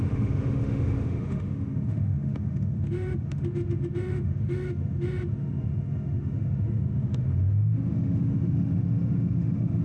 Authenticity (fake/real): fake